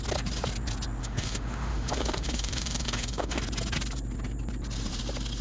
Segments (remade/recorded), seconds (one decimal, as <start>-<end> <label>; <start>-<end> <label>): 0.0-1.0 recorded; 1.0-3.4 remade; 3.4-5.4 recorded